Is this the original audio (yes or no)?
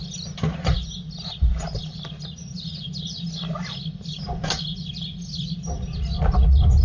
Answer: yes